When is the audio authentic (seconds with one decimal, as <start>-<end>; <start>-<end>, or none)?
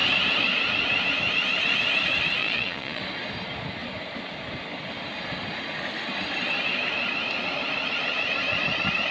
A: 0.0-2.4; 3.0-9.1